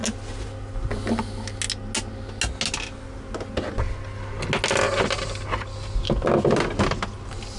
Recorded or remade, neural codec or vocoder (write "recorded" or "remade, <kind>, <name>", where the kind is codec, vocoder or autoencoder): recorded